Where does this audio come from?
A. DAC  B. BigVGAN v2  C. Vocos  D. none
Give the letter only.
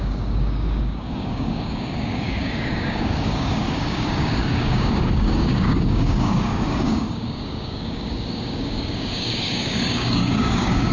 A